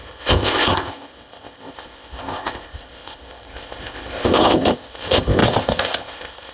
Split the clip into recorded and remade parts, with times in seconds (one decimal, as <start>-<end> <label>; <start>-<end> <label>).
0.0-6.5 remade